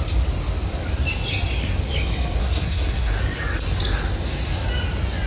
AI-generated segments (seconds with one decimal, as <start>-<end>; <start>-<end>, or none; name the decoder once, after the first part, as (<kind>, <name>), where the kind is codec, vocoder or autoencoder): 2.4-3.2 (codec, SNAC)